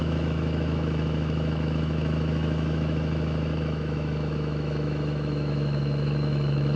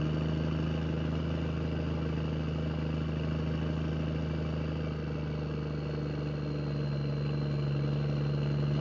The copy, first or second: first